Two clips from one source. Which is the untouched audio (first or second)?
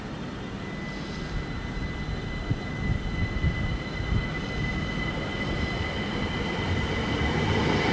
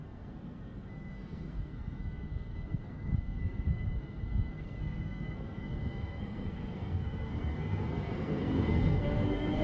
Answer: first